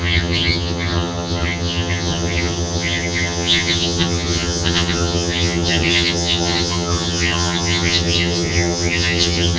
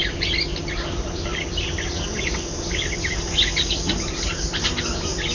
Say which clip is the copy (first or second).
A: first